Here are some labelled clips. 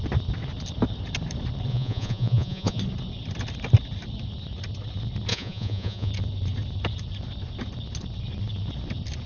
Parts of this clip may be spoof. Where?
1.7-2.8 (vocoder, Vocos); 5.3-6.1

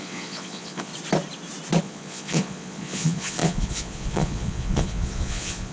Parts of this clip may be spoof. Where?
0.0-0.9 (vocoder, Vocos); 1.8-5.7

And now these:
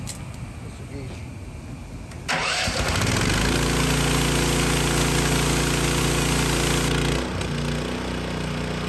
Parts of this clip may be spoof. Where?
none

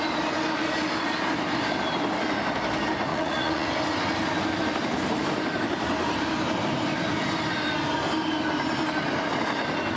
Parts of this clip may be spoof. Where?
3.1-3.7 (vocoder, Vocos)

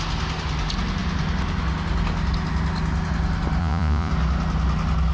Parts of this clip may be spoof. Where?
3.6-4.1 (vocoder, Vocos)

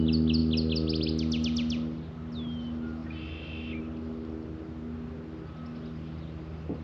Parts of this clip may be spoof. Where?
none

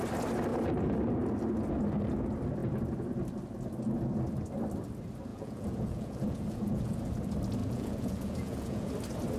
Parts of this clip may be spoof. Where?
5.3-7.0 (vocoder, Vocos); 7.6-8.9